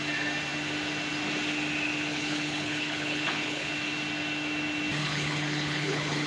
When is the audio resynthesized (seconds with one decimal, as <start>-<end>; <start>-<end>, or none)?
2.1-3.7; 5.0-6.3